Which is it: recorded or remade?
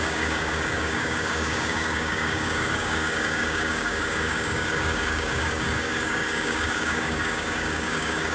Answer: remade